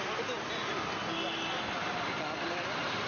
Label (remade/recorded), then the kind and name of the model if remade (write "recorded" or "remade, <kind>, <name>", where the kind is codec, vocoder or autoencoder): recorded